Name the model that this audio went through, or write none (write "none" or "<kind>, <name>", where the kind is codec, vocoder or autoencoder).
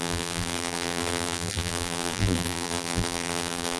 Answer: vocoder, BigVGAN v2